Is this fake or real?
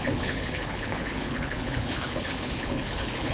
fake